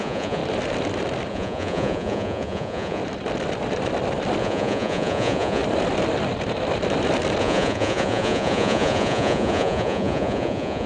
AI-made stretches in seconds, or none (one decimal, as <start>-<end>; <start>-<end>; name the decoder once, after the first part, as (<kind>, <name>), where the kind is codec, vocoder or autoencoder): 0.0-0.4 (vocoder, Vocos); 1.3-3.0; 4.4-5.6; 7.4-10.9